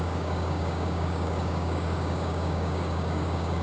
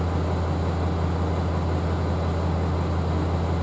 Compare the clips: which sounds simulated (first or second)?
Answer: first